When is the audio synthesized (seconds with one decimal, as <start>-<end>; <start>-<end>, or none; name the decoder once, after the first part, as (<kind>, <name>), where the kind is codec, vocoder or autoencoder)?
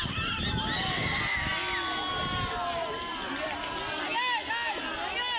none